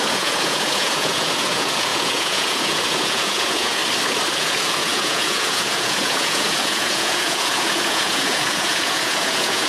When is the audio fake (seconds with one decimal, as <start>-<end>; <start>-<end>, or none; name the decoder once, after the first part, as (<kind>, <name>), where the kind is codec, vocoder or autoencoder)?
0.0-3.8 (vocoder, Vocos); 4.3-9.7